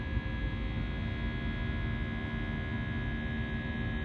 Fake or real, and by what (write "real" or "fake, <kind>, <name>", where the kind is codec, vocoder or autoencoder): real